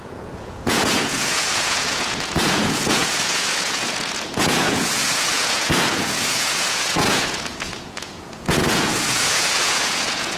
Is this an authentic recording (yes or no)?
no